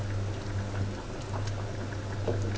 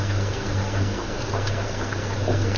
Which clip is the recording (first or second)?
first